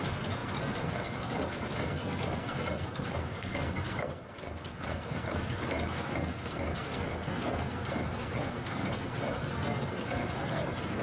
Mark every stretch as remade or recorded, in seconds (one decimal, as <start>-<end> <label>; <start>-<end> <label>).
0.0-11.0 remade